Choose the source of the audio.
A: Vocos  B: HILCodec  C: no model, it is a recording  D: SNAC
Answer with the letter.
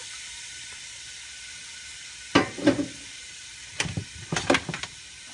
C